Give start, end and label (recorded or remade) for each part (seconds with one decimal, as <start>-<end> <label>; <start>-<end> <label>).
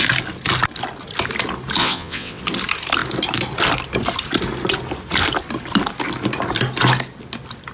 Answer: 0.0-1.8 recorded; 1.8-2.4 remade; 2.4-7.7 recorded